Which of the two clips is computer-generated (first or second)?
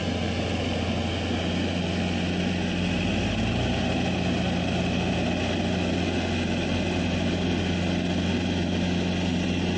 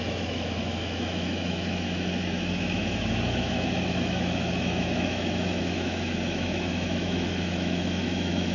second